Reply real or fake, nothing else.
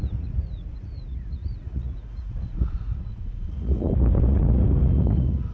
fake